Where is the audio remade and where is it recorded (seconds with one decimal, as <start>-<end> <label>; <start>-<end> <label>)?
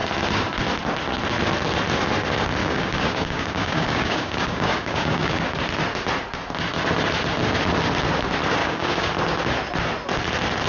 0.0-2.6 recorded; 2.6-5.4 remade; 5.4-8.6 recorded; 8.6-9.1 remade; 9.1-10.7 recorded